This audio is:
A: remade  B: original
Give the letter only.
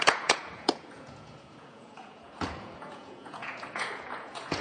A